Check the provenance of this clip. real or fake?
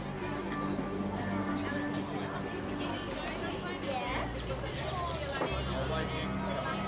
real